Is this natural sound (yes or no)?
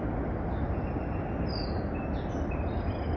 yes